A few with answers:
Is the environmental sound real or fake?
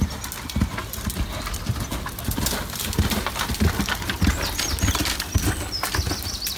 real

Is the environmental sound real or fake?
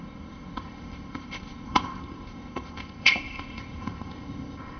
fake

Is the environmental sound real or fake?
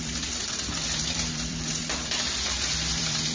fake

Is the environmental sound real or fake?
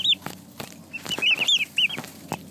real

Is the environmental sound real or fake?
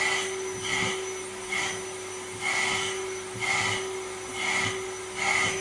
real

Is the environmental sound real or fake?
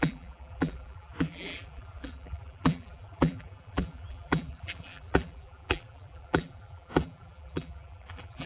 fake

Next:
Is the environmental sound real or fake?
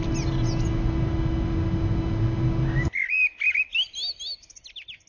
real